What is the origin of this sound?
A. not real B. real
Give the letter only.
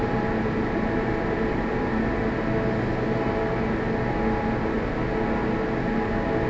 B